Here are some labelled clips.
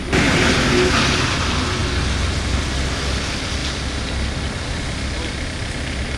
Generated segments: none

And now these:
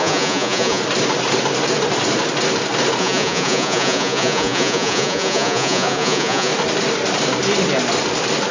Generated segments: 0.0-0.8 (vocoder, Vocos); 3.0-6.5

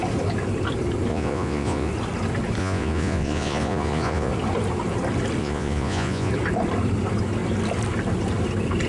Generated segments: 1.1-1.9 (vocoder, Vocos); 2.6-4.3; 5.4-6.3

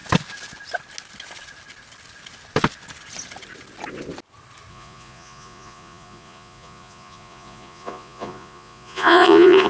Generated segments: 4.7-9.7 (vocoder, Vocos)